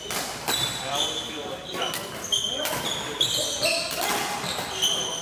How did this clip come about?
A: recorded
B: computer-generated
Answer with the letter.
A